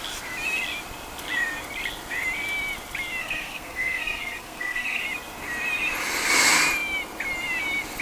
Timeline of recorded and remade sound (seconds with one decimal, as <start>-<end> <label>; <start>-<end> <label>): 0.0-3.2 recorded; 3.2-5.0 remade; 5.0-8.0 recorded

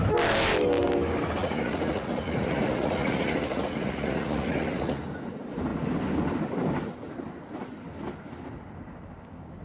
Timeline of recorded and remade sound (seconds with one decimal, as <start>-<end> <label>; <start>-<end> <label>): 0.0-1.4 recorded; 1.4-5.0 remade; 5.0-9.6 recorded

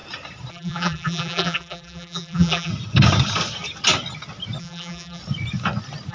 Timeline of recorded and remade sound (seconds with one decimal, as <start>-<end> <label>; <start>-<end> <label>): 0.0-0.5 recorded; 0.5-2.7 remade; 2.7-4.6 recorded; 4.6-5.2 remade; 5.2-6.1 recorded

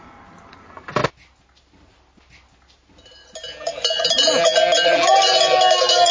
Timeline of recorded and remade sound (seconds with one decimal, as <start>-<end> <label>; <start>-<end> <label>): 0.0-6.1 recorded